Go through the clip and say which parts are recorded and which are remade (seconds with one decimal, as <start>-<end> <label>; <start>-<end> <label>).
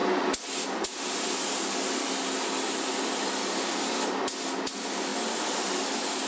0.0-6.3 recorded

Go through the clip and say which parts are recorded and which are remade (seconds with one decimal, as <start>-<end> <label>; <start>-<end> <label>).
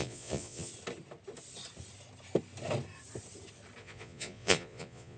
0.0-0.7 remade; 0.7-3.8 recorded; 3.8-5.2 remade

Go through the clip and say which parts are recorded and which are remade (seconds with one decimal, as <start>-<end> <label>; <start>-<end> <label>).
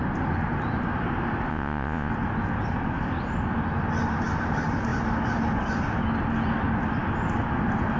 0.0-1.5 recorded; 1.5-2.1 remade; 2.1-8.0 recorded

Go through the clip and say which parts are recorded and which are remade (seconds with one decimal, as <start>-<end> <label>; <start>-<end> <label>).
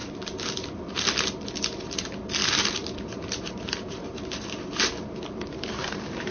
0.0-0.8 remade; 0.8-2.4 recorded; 2.4-6.3 remade